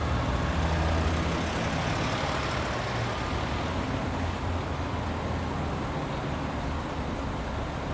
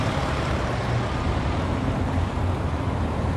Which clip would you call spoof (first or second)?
second